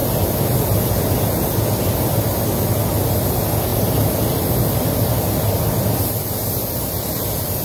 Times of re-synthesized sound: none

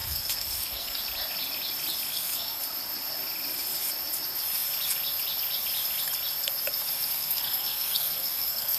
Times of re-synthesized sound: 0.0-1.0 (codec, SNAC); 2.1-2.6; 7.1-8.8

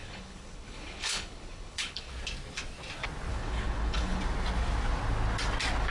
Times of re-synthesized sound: 0.0-2.1 (codec, HILCodec); 3.3-4.2

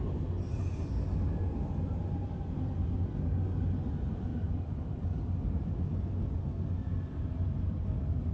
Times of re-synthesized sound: none

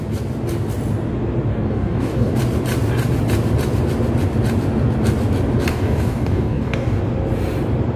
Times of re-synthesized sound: 1.5-2.4 (codec, DAC); 5.7-7.0

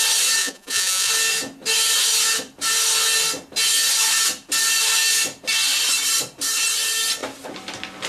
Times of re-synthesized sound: 0.4-1.1 (vocoder, Vocos)

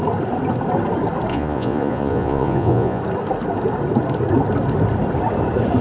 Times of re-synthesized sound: 1.3-3.0 (vocoder, Vocos)